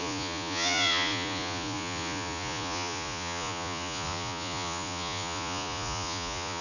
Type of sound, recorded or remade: remade